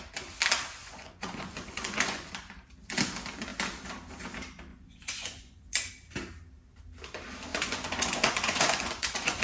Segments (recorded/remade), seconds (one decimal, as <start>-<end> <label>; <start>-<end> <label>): 0.0-0.8 recorded; 0.8-2.3 remade; 2.3-4.7 recorded; 4.7-5.9 remade; 5.9-7.5 recorded; 7.5-9.4 remade